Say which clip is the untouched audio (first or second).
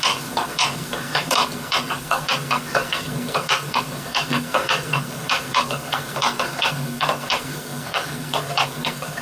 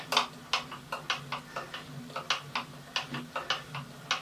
second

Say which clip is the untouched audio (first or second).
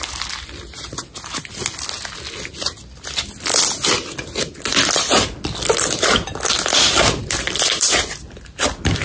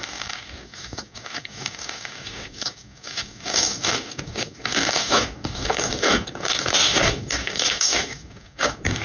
first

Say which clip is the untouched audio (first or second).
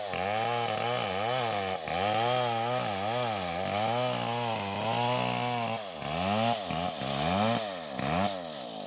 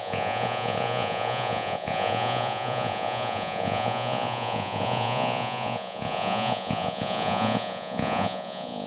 first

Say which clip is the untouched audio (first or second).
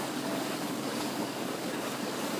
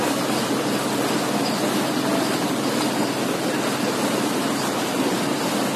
second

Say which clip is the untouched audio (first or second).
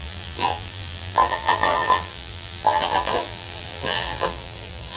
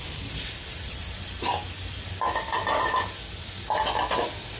second